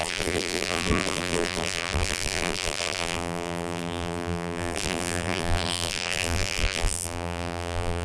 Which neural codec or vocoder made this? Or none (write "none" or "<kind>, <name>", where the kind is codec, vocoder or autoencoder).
vocoder, BigVGAN v2